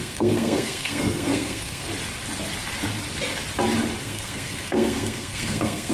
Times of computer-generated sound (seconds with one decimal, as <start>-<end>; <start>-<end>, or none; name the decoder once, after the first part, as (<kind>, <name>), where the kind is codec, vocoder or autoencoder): 0.0-1.9 (codec, SNAC); 4.0-5.9